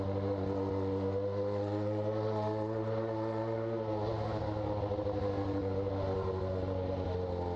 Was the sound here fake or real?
real